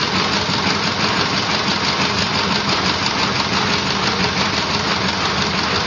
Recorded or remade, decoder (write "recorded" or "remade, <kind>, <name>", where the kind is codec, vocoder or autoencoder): recorded